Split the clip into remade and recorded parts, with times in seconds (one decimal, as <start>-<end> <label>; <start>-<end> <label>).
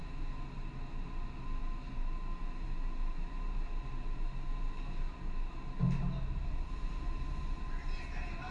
0.0-8.5 recorded